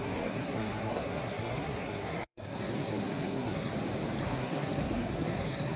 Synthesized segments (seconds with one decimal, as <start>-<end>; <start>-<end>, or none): 0.0-3.7; 4.2-5.8